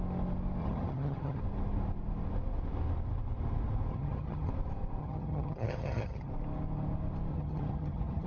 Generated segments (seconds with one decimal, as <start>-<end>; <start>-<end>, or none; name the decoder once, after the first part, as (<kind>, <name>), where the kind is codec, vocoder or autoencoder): 0.6-1.4 (vocoder, HiFi-GAN); 3.9-4.5; 5.0-6.3; 7.3-8.3